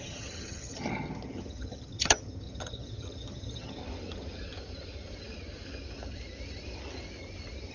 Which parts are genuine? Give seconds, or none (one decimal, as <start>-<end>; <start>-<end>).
3.8-7.7